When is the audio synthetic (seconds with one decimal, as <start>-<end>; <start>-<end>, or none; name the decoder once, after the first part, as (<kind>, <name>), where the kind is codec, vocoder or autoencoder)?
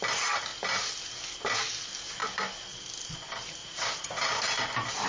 3.6-4.4 (vocoder, Vocos)